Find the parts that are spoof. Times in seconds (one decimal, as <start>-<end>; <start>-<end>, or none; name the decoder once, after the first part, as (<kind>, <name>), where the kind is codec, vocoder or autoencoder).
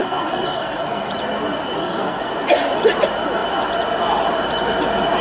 0.0-1.1 (codec, SNAC); 1.8-2.3